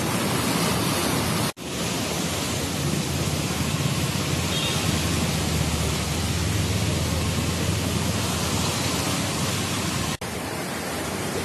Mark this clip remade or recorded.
recorded